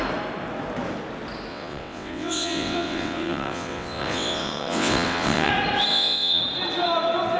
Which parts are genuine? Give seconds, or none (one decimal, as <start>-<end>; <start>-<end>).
0.0-1.5; 5.5-5.9; 6.4-7.4